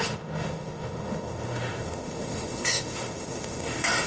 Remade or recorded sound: remade